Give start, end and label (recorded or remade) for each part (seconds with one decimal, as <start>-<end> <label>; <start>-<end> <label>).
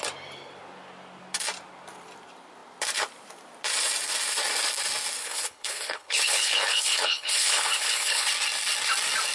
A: 0.0-5.2 recorded; 5.2-8.3 remade; 8.3-9.3 recorded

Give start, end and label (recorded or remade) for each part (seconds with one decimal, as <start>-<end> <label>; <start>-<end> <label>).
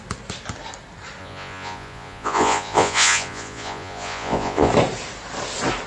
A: 0.0-1.2 recorded; 1.2-4.7 remade; 4.7-5.9 recorded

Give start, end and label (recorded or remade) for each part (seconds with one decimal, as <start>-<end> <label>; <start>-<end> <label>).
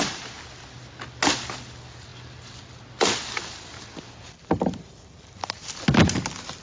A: 0.0-6.6 recorded